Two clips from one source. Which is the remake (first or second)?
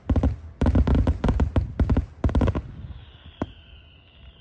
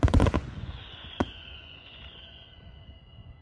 second